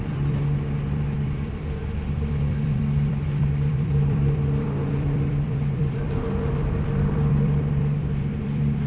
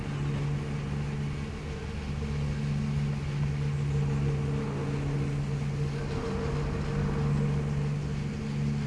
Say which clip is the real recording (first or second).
second